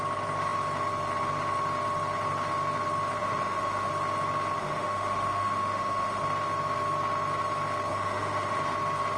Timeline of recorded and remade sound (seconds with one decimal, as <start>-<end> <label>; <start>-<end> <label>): 0.0-3.2 recorded; 3.2-3.9 remade; 3.9-4.6 recorded; 4.6-6.2 remade; 6.2-7.9 recorded; 7.9-8.6 remade; 8.6-9.2 recorded